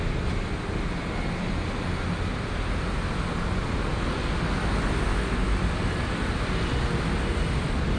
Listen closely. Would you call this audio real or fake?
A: real